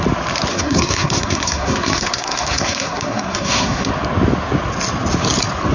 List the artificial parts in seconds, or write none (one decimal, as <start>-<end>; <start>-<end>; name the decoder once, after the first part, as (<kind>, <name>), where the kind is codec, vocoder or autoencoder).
0.5-3.9 (codec, SNAC)